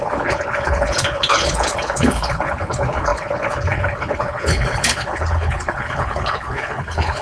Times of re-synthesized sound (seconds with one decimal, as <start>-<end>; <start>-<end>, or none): 0.0-7.2